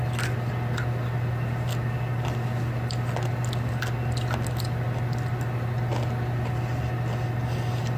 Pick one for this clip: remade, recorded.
recorded